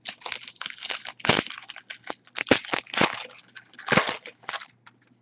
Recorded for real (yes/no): yes